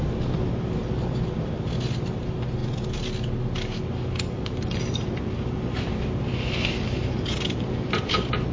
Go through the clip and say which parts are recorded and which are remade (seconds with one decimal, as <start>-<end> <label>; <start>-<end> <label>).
0.0-8.5 recorded